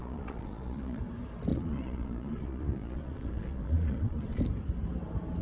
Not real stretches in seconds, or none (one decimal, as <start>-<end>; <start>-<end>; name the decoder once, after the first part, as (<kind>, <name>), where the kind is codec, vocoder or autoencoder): 0.0-1.0 (vocoder, Vocos); 1.5-4.4